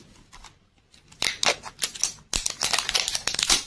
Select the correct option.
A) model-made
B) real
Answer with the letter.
B